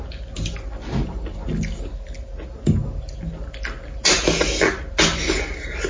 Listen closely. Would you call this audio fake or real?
real